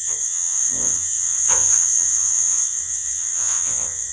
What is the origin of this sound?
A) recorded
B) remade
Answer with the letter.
B